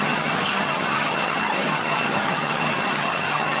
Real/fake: fake